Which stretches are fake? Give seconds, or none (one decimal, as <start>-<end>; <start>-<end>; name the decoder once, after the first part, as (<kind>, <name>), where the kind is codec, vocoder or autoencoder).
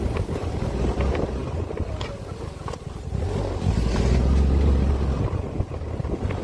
none